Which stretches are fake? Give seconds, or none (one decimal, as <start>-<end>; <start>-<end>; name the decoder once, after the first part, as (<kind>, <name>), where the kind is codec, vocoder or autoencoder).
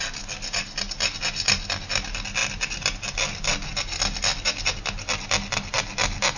none